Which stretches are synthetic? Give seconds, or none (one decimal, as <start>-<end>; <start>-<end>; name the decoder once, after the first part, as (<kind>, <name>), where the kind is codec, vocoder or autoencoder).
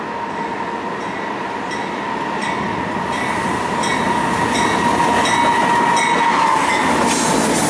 none